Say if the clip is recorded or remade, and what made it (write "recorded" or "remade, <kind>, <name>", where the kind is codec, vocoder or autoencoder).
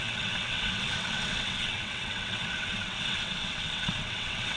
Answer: remade, vocoder, WaveNeXt